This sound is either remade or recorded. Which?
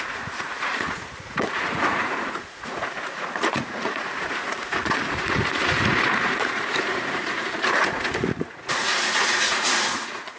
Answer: remade